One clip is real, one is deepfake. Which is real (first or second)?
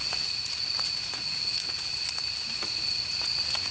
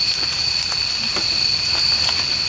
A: second